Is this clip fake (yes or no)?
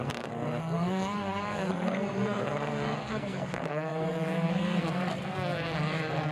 yes